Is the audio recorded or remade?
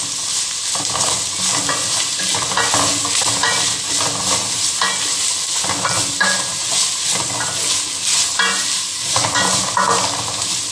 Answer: recorded